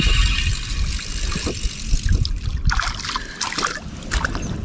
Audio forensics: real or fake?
real